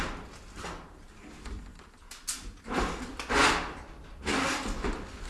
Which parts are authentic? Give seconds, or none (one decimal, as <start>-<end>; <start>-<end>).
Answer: 0.0-5.3

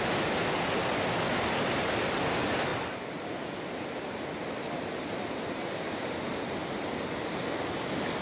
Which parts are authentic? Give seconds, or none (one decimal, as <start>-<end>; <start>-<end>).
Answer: 0.0-8.2

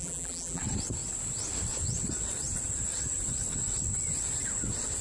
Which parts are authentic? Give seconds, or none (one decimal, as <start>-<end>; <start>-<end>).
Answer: 0.6-5.0

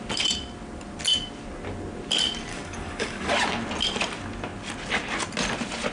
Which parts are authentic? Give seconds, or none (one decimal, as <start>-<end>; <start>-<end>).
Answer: 0.0-2.5; 3.3-5.9

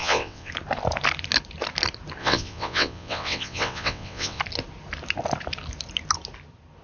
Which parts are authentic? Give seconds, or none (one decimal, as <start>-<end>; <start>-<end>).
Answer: 0.5-2.2; 4.4-6.8

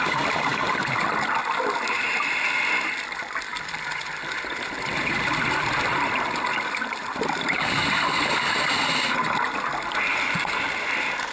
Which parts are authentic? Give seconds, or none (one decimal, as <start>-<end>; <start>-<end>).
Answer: 0.0-3.5; 8.7-11.3

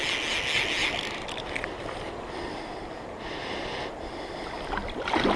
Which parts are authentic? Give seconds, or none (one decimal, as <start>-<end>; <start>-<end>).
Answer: 0.0-5.4

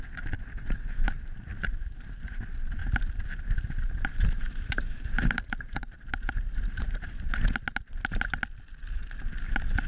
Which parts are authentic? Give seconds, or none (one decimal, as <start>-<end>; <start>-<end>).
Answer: 0.0-1.5; 2.4-2.8; 7.1-9.9